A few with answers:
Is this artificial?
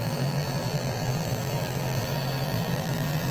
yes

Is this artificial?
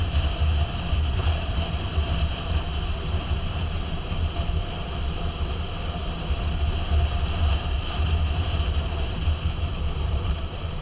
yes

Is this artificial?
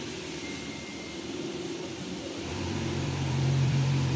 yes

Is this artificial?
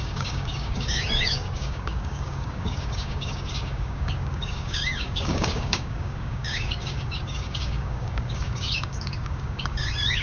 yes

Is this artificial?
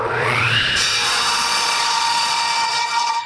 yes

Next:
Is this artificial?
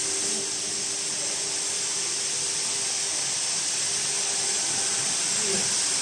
no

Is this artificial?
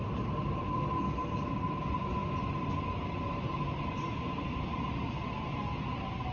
no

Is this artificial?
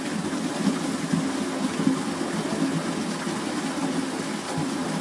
no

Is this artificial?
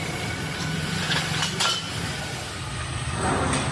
yes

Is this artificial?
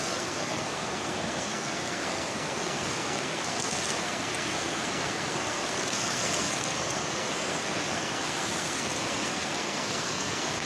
yes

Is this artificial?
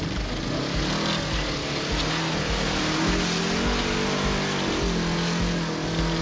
no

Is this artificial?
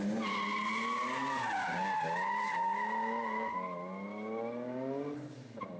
no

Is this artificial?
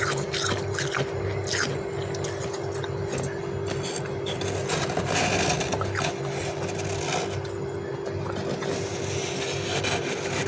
no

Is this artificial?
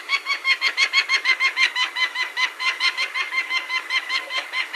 yes